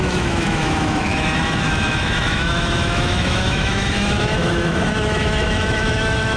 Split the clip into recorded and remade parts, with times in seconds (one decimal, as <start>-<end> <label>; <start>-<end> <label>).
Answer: 0.0-6.4 remade